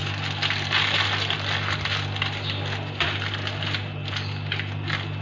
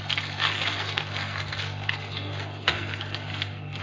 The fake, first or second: second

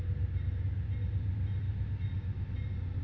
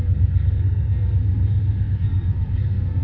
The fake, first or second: second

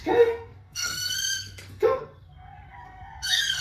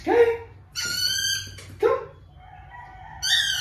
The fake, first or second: first